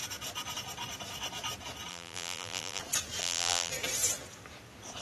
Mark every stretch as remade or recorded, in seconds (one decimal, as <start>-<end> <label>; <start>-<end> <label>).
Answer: 0.0-1.9 recorded; 1.9-2.8 remade; 2.8-3.2 recorded; 3.2-3.7 remade; 3.7-5.0 recorded

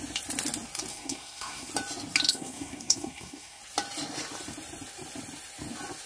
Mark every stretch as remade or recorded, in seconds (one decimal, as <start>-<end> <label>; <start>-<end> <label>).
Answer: 0.0-0.9 recorded; 0.9-1.7 remade; 1.7-2.3 recorded; 2.3-3.6 remade; 3.6-6.1 recorded

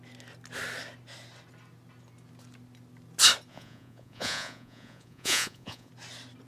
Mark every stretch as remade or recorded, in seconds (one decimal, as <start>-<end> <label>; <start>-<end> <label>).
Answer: 0.0-3.5 recorded; 3.5-5.9 remade; 5.9-6.5 recorded

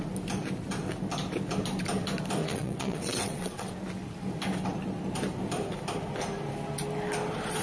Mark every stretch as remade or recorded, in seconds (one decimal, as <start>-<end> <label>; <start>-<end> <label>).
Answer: 0.0-2.4 recorded; 2.4-3.7 remade; 3.7-7.6 recorded